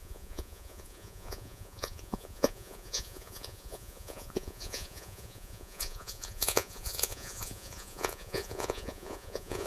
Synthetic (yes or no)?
yes